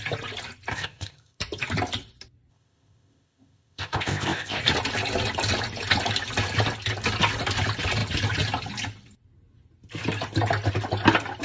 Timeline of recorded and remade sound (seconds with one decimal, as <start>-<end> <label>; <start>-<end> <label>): 0.0-0.7 recorded; 0.7-1.4 remade; 1.4-2.5 recorded; 2.5-4.6 remade; 4.6-11.4 recorded